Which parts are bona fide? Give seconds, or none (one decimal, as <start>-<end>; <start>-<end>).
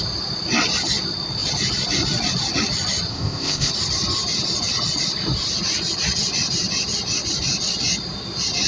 0.0-3.1; 3.7-8.7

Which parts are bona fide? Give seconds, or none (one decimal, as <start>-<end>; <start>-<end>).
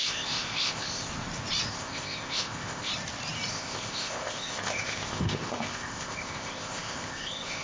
1.1-1.7; 2.9-3.5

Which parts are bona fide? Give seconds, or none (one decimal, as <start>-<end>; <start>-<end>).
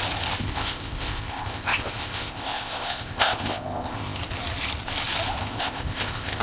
0.0-0.4; 4.2-5.4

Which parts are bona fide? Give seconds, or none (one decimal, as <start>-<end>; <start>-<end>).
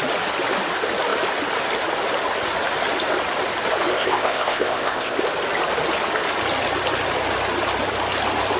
0.0-3.9; 5.2-8.6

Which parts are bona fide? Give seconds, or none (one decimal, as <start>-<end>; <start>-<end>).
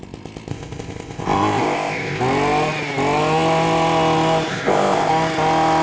0.0-0.5; 2.2-4.5; 5.1-5.8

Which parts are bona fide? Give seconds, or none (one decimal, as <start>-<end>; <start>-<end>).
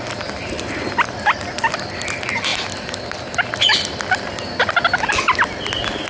0.0-6.1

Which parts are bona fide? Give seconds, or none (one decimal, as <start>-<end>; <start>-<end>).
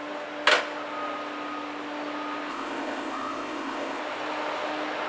0.0-2.5; 4.0-5.1